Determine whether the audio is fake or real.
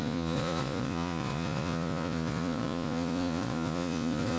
fake